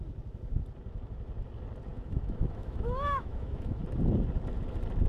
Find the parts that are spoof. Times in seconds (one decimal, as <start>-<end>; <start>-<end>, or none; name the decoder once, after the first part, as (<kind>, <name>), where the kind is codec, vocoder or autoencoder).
1.9-3.8 (autoencoder, DAC-VAE)